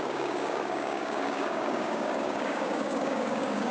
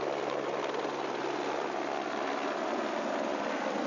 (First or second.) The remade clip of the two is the first